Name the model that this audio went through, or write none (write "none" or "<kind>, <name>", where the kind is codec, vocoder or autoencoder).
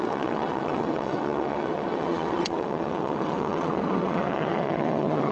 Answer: vocoder, WaveNeXt